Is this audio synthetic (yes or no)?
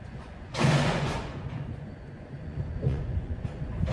yes